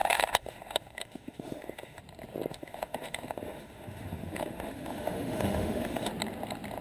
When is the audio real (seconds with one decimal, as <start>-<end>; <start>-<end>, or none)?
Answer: 2.0-2.5; 6.1-6.8